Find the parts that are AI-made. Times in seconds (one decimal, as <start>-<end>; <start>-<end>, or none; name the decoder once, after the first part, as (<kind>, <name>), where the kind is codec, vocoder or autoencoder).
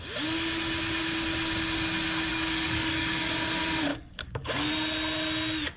2.3-3.3 (codec, DAC); 3.9-4.7